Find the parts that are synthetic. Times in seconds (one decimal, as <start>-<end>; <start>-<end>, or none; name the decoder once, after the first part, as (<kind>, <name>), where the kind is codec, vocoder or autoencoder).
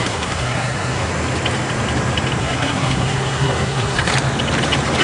0.0-1.1 (codec, SNAC); 2.4-4.1